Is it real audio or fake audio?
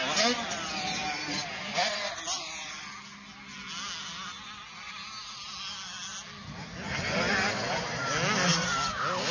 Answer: real